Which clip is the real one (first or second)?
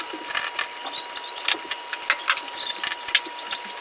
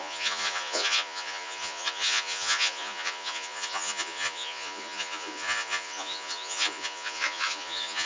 first